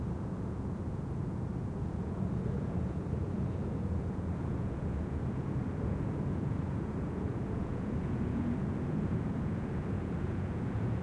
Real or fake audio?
fake